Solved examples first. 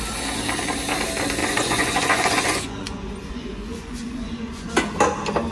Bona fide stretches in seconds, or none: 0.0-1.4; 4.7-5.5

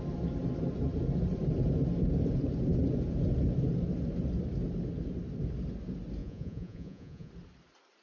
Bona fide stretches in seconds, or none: 0.0-6.2; 7.3-8.0

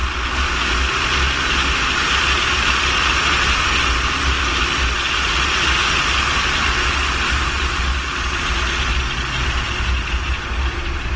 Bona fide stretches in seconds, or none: 0.0-11.2

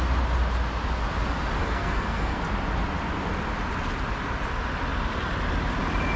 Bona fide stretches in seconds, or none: 0.0-1.6; 2.4-6.2

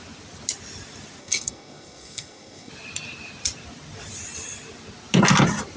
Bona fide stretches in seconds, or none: 0.0-1.2; 2.7-5.8